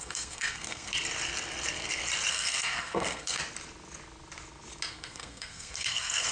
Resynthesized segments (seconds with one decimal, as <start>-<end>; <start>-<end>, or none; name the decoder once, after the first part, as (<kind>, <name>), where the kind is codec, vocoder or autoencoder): 0.0-0.9 (codec, SNAC); 2.3-3.4; 4.9-6.3